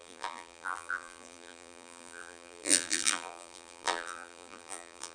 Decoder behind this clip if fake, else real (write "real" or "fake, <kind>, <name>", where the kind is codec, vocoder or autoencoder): fake, vocoder, BigVGAN v2